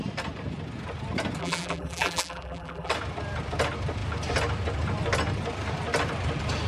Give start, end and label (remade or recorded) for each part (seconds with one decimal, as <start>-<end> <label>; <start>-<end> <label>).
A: 0.0-1.4 recorded; 1.4-2.9 remade; 2.9-6.7 recorded